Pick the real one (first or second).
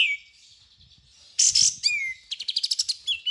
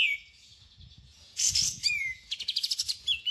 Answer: first